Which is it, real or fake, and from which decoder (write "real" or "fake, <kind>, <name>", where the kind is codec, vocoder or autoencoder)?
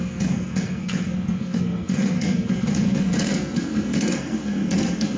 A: fake, codec, SNAC